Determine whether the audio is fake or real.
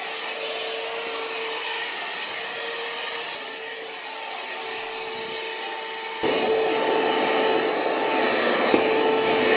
real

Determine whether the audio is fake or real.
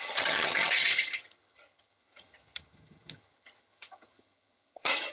fake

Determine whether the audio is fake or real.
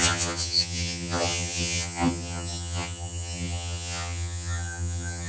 fake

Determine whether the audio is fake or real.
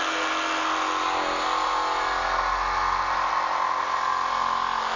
real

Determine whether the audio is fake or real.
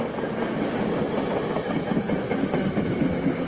real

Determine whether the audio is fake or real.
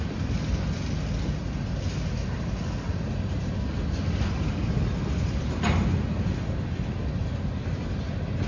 real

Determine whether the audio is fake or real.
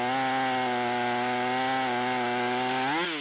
real